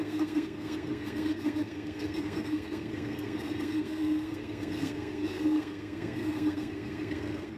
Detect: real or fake fake